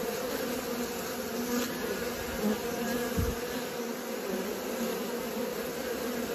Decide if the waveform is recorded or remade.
recorded